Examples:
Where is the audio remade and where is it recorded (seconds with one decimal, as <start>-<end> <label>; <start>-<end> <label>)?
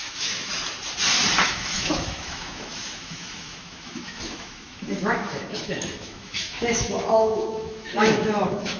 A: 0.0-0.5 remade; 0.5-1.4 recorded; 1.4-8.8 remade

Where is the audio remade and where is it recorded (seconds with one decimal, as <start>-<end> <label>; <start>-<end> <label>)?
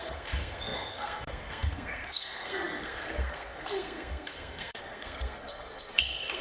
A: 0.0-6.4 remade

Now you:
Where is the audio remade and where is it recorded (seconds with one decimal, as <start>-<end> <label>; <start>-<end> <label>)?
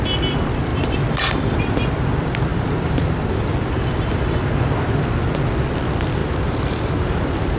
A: 0.0-0.7 recorded; 0.7-1.4 remade; 1.4-2.5 recorded; 2.5-3.2 remade; 3.2-6.2 recorded; 6.2-7.6 remade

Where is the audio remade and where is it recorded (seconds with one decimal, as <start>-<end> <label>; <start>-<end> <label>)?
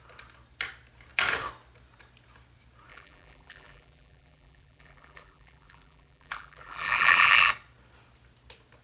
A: 0.0-2.9 recorded; 2.9-7.5 remade; 7.5-8.8 recorded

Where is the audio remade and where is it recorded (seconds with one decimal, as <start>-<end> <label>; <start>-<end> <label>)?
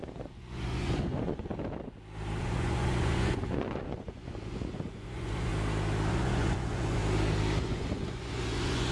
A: 0.0-1.5 remade; 1.5-2.4 recorded; 2.4-5.5 remade; 5.5-6.1 recorded; 6.1-7.0 remade; 7.0-7.6 recorded; 7.6-8.9 remade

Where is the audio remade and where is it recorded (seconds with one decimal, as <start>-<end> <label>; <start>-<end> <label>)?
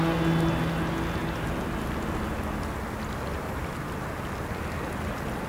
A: 0.0-5.5 recorded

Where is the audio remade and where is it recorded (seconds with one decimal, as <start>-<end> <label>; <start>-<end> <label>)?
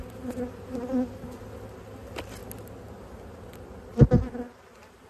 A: 0.0-5.1 recorded